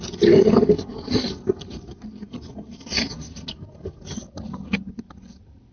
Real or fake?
real